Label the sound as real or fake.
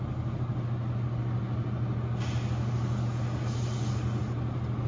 real